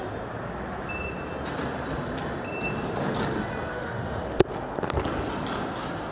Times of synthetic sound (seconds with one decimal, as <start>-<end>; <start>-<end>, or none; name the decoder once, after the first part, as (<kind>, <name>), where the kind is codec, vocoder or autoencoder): 3.7-4.2 (autoencoder, DAC-VAE)